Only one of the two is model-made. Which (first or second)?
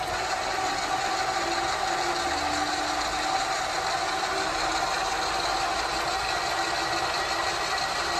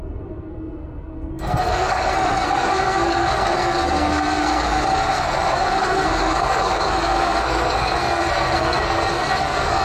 second